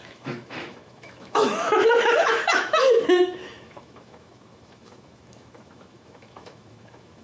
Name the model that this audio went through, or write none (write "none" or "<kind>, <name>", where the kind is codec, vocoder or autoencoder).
autoencoder, DAC-VAE